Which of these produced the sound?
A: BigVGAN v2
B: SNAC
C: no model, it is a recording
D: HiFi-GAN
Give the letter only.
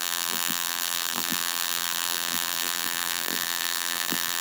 A